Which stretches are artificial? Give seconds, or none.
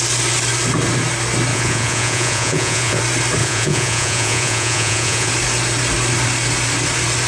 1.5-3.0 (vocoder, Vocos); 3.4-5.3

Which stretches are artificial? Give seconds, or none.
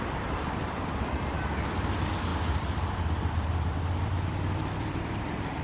0.0-5.6 (vocoder, BigVGAN v2)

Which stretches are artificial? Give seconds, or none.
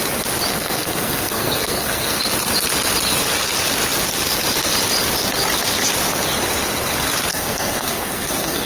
0.5-2.2 (codec, SNAC); 7.3-8.7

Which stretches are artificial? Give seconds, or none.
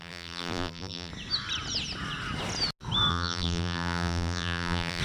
0.0-1.1 (vocoder, BigVGAN v2); 3.1-5.0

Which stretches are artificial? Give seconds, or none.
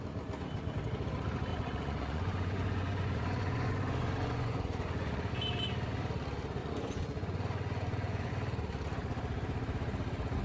1.5-5.3 (vocoder, Vocos); 6.6-8.3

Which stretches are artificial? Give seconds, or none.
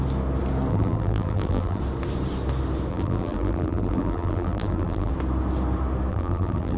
0.7-1.8 (vocoder, BigVGAN v2); 2.9-5.1; 6.1-6.8